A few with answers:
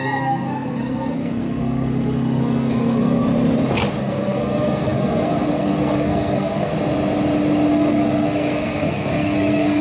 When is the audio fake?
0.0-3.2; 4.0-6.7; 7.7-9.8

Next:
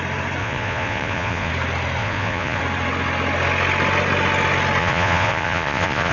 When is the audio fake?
0.4-1.5; 2.0-2.6; 4.8-6.1

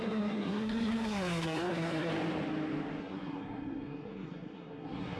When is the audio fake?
0.0-2.1; 3.0-5.2

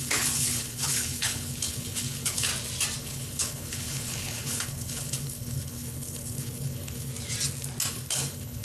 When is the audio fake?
0.0-2.5; 3.0-7.1; 7.9-8.6

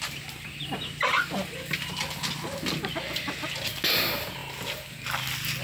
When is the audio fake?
none

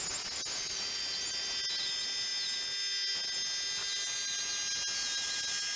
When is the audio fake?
none